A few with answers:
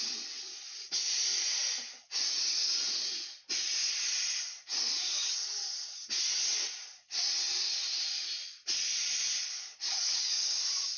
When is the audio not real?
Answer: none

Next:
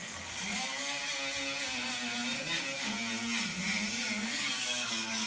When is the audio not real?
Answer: 0.0-1.0 (codec, DAC); 4.2-5.3

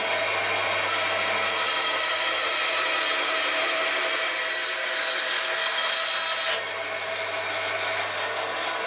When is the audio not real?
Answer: 4.8-6.1 (codec, DAC)

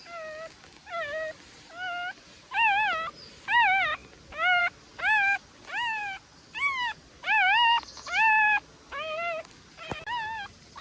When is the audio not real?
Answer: none